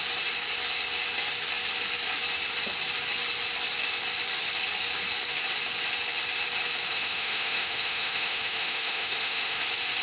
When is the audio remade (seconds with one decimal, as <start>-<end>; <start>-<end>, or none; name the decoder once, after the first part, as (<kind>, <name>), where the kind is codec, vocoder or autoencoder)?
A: 6.9-9.6 (autoencoder, DAC-VAE)

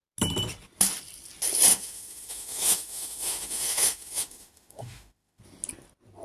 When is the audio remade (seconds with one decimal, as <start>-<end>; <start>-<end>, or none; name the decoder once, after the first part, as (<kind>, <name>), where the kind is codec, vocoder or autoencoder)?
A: 1.7-5.4 (autoencoder, DAC-VAE)